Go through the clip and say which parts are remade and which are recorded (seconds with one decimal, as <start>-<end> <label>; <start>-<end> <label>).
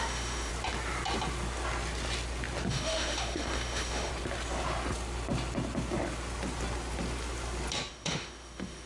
0.0-0.5 remade; 0.5-2.7 recorded; 2.7-4.1 remade; 4.1-7.9 recorded; 7.9-8.9 remade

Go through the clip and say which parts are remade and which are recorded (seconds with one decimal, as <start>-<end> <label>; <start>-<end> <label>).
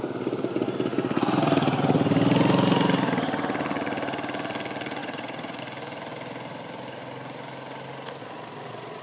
0.0-5.0 recorded; 5.0-5.6 remade; 5.6-8.2 recorded; 8.2-9.0 remade